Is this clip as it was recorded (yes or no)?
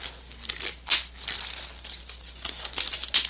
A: yes